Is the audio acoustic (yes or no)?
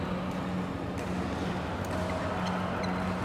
yes